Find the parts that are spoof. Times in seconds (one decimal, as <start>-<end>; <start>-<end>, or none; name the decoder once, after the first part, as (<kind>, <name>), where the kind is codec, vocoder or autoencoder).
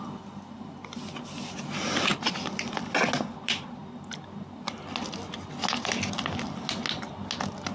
2.1-3.1 (vocoder, BigVGAN v2)